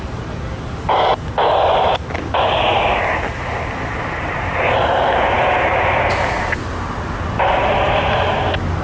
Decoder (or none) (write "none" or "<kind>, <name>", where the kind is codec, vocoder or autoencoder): none